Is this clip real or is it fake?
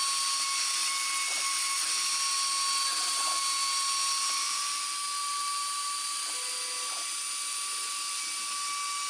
real